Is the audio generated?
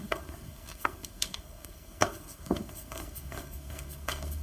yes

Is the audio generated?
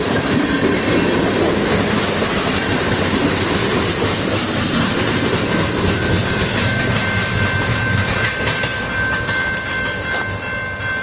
no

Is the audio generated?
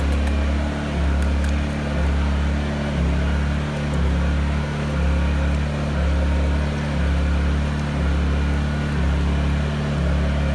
no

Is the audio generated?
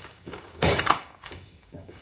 yes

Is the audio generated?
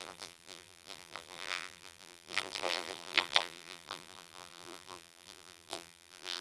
yes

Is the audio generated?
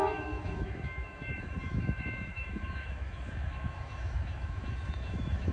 yes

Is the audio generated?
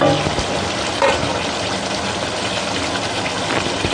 no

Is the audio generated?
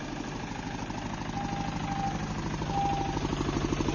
no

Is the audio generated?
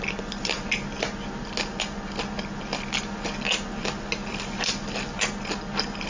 no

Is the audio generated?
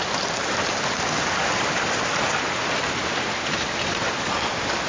no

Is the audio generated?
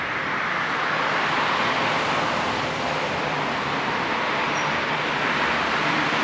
yes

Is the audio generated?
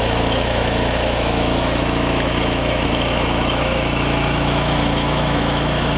yes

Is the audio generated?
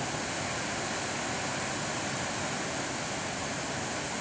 no